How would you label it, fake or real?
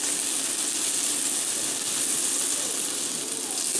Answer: real